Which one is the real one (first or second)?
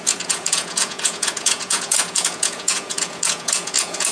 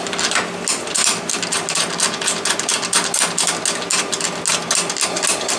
second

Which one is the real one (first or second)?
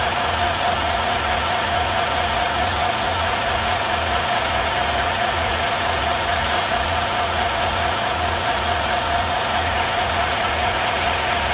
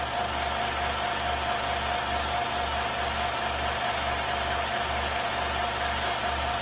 second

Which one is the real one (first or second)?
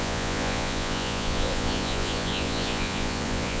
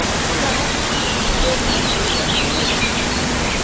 second